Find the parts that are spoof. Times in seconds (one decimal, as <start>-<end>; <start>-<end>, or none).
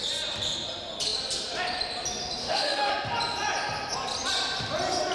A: 2.4-2.9